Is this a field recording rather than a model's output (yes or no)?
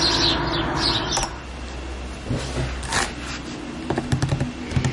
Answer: yes